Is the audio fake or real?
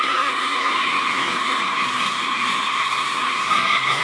fake